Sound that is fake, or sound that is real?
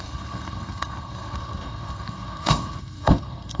fake